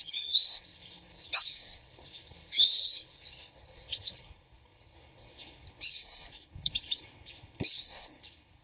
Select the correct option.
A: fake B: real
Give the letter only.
A